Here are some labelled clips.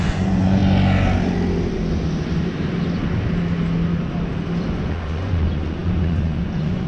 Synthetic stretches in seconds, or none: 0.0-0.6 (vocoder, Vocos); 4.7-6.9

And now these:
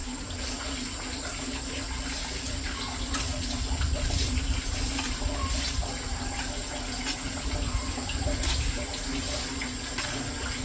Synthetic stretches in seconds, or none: none

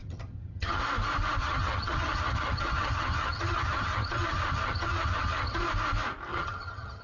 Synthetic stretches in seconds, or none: 0.0-0.8 (vocoder, HiFi-GAN); 1.4-5.6; 6.3-7.0

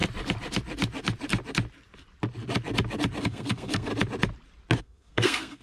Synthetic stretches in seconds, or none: 3.2-3.9 (codec, SNAC); 4.8-5.6

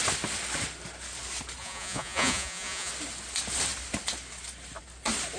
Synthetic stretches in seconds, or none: 1.6-2.9 (vocoder, Vocos)

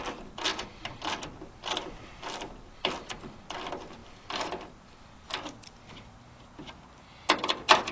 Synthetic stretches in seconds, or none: none

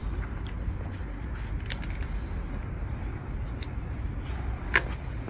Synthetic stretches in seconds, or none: none